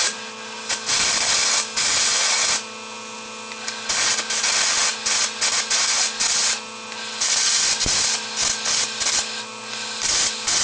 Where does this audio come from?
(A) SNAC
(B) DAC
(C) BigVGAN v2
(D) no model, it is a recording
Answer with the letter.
D